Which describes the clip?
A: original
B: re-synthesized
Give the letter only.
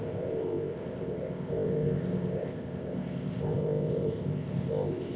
B